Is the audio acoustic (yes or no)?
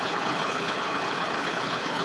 no